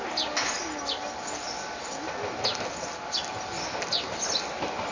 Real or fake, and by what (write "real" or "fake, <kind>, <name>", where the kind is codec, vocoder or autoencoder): real